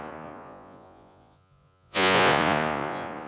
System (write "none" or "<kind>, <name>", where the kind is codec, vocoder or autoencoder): vocoder, Vocos